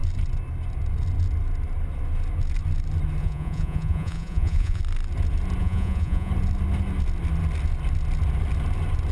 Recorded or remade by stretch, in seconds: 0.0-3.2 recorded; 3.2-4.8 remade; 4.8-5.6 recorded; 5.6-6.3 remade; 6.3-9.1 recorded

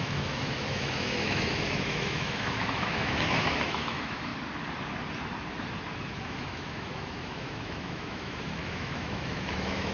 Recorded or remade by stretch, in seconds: 0.0-4.3 remade; 4.3-6.2 recorded; 6.2-9.9 remade